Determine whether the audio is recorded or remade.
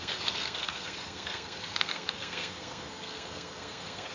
remade